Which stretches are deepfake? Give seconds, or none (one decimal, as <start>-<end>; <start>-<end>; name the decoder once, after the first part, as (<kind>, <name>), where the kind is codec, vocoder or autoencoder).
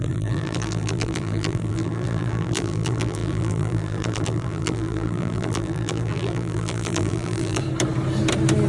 0.0-7.6 (vocoder, BigVGAN v2)